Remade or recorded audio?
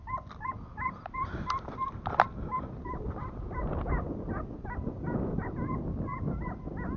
recorded